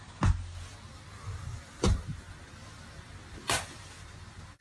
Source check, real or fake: real